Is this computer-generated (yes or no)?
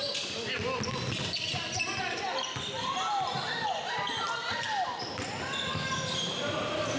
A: no